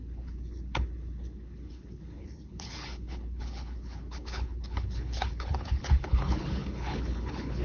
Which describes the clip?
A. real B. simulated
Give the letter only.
B